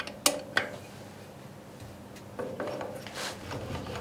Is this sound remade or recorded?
recorded